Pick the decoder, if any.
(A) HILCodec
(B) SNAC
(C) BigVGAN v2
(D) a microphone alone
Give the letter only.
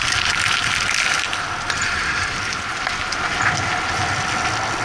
D